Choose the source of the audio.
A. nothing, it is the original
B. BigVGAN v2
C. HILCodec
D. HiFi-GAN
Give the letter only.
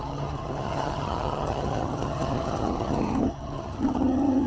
D